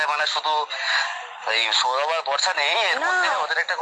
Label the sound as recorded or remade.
recorded